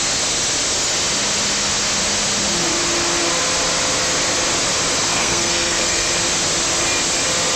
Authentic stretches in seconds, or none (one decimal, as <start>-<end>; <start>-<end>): 0.0-5.1; 6.1-7.6